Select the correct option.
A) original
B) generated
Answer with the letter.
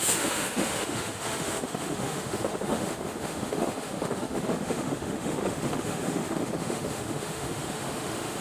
B